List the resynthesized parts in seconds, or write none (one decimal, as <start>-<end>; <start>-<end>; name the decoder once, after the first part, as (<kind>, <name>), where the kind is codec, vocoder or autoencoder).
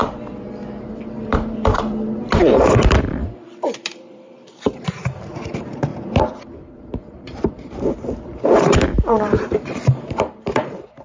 1.2-5.9 (vocoder, BigVGAN v2); 6.6-11.0